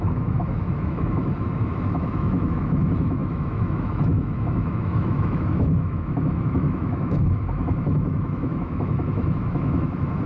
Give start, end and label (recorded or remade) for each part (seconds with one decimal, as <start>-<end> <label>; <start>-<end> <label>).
0.0-10.3 remade